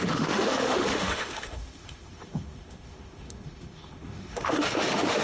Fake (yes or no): yes